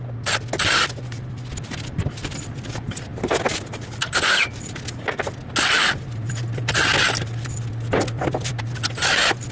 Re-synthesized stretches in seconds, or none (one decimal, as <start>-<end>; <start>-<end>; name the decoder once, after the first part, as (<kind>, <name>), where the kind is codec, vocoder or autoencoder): none